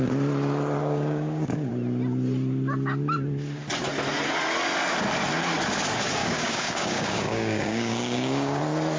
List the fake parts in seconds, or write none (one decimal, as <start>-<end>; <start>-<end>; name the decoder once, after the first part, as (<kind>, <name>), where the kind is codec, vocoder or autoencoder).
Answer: 0.8-1.7 (codec, DAC); 6.2-8.6